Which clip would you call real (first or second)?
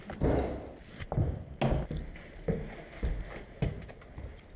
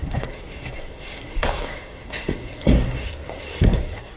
first